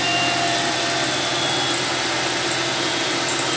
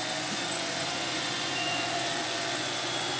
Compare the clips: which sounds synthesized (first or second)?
second